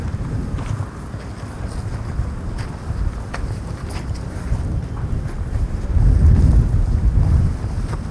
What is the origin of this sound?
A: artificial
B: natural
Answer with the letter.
B